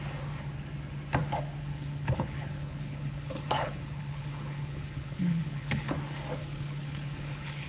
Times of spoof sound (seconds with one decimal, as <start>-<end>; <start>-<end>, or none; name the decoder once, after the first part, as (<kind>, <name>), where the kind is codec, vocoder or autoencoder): 1.6-5.9 (codec, HILCodec); 6.4-7.7